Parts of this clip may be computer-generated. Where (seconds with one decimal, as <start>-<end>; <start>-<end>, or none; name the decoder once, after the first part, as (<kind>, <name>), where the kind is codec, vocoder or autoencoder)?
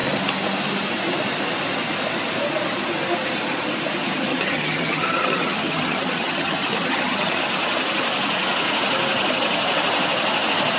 4.3-7.4 (vocoder, HiFi-GAN)